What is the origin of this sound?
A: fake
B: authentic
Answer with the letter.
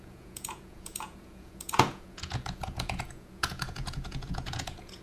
A